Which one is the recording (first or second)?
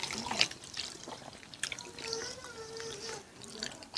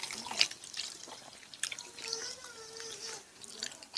second